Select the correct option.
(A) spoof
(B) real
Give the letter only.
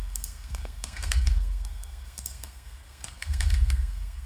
A